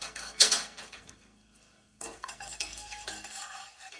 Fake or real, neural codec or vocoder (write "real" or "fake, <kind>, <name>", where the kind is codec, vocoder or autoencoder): fake, codec, SNAC